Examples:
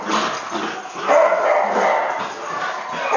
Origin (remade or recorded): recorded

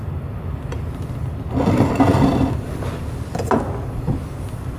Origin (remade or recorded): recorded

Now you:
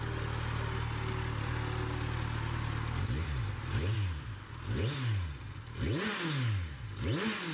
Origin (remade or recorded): recorded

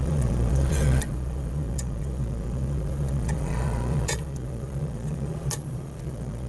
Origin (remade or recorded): remade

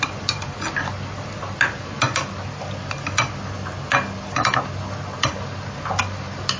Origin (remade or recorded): recorded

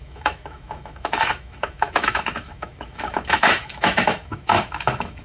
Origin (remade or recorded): remade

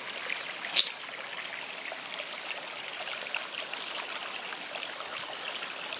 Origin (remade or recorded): recorded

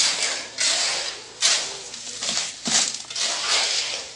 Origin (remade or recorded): recorded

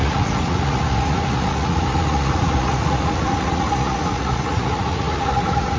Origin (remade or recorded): remade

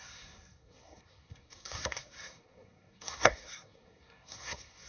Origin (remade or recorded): remade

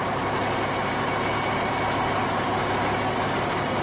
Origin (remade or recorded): recorded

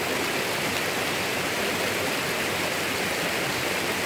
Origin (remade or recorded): recorded